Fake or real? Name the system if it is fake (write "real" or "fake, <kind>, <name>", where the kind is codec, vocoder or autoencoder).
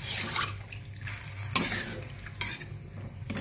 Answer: real